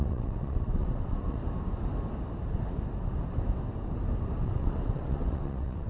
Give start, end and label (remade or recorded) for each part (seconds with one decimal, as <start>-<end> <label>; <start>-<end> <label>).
0.0-1.4 remade; 1.4-4.4 recorded; 4.4-5.9 remade